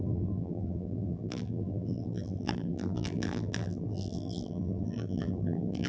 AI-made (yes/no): yes